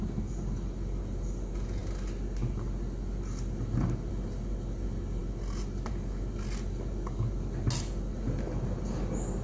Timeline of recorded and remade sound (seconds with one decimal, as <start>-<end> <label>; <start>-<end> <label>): 0.0-9.4 recorded